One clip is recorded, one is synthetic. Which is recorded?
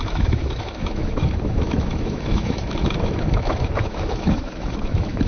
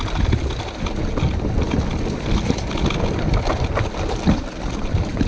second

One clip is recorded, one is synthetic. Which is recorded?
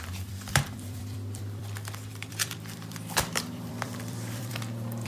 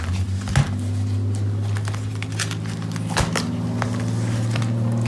second